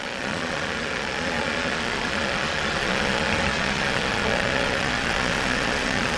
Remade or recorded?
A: remade